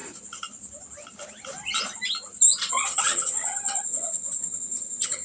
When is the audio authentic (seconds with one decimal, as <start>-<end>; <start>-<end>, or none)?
0.0-2.7